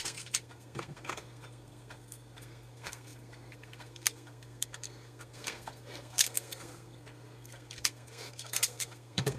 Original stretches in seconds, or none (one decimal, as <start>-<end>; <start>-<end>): none